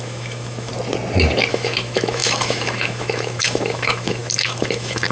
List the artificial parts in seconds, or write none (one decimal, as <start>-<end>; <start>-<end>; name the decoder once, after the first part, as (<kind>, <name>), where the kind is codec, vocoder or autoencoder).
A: 0.0-0.7 (autoencoder, DAC-VAE); 1.5-5.1

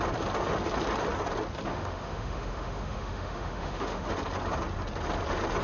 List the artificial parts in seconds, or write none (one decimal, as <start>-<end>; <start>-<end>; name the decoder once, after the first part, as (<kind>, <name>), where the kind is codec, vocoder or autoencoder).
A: 1.7-4.1 (autoencoder, DAC-VAE)